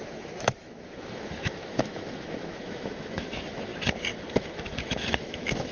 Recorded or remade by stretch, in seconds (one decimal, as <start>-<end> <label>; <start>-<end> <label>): 0.0-3.7 remade; 3.7-4.3 recorded; 4.3-5.7 remade